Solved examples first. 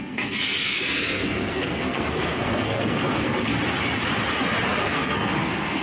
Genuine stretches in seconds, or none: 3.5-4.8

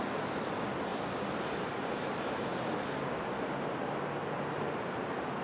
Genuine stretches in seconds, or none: 0.0-0.9; 1.4-5.4

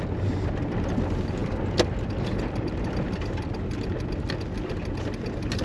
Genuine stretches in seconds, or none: 0.0-5.6